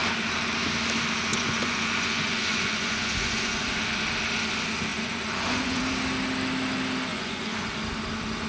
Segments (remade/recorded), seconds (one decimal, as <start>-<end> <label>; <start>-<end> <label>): 0.0-1.3 recorded; 1.3-3.8 remade; 3.8-4.9 recorded; 4.9-5.8 remade; 5.8-7.1 recorded; 7.1-7.7 remade; 7.7-8.5 recorded